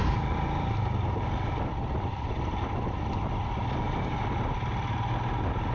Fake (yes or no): no